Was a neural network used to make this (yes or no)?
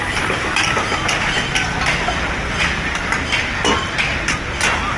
no